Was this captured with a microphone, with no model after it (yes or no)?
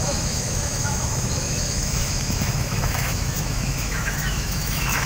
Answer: no